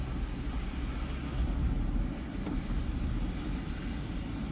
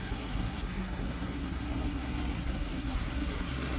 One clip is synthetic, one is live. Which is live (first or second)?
first